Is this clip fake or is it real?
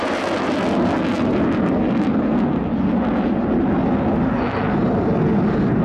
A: real